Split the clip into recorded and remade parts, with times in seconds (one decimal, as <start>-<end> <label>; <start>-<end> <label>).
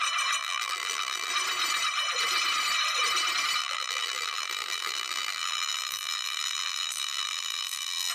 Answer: 0.0-0.4 recorded; 0.4-1.3 remade; 1.3-3.6 recorded; 3.6-8.1 remade